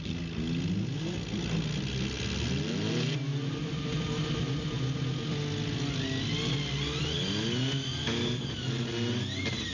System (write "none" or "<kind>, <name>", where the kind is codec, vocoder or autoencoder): none